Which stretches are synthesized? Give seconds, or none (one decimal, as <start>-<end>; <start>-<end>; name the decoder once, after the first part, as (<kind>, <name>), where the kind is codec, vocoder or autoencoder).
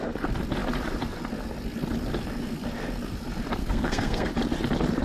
3.6-4.3 (codec, SNAC)